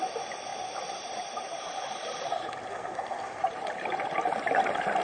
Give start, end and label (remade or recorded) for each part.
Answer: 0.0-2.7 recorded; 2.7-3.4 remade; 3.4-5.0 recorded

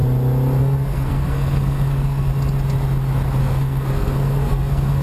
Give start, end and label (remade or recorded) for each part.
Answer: 0.0-0.6 recorded; 0.6-2.3 remade; 2.3-3.4 recorded; 3.4-5.0 remade